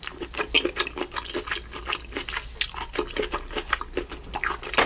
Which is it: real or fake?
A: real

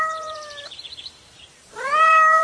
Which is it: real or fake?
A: fake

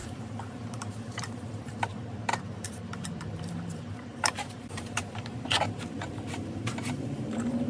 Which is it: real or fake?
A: fake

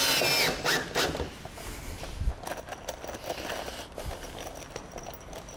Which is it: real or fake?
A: real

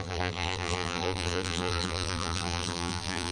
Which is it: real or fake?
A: fake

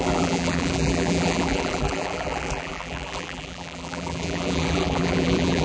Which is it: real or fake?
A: fake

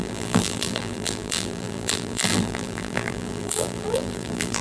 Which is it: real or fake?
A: fake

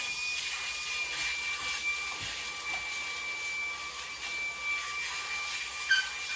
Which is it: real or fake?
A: real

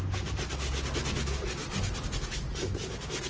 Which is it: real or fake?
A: real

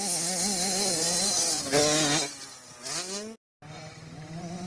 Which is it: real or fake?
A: real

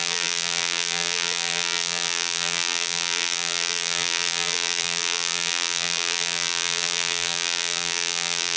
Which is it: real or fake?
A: fake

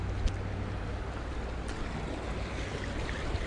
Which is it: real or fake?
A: real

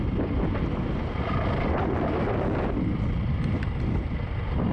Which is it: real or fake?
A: real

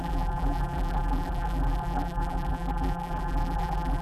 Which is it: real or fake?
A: fake